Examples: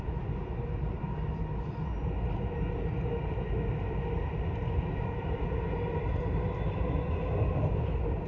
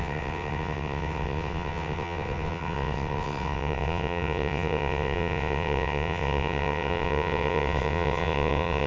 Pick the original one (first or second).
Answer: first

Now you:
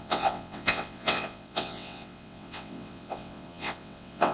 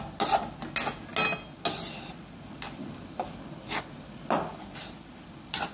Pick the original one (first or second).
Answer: second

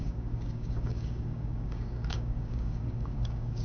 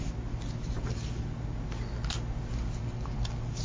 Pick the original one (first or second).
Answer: second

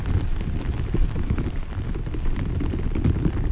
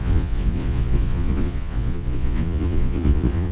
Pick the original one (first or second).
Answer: first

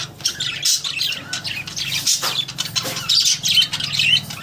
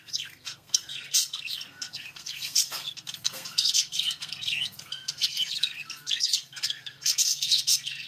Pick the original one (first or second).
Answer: first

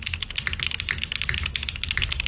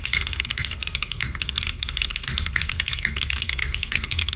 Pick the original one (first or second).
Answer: first